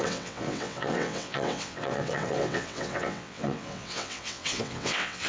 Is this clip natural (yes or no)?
no